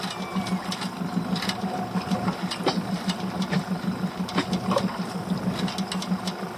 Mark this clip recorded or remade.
recorded